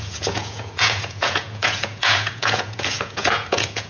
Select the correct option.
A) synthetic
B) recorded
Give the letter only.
A